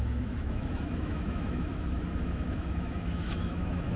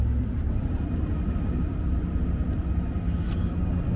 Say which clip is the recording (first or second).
second